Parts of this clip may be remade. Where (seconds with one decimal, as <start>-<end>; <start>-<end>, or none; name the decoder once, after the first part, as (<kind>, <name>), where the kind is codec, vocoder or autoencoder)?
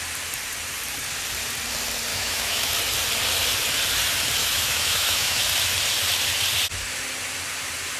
2.1-2.7 (autoencoder, DAC-VAE); 4.4-5.4